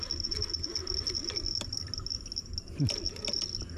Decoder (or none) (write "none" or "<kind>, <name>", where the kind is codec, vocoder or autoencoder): none